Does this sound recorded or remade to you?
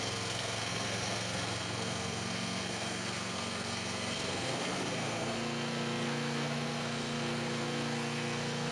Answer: remade